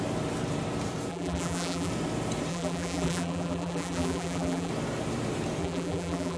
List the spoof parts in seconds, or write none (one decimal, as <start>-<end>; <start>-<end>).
1.1-1.9; 2.5-4.7; 5.6-6.4